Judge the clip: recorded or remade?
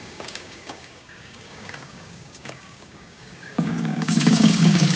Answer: remade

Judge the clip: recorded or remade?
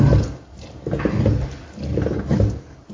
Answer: recorded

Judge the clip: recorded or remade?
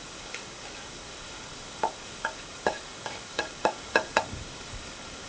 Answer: remade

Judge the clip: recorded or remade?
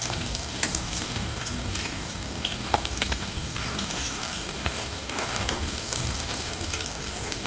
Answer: remade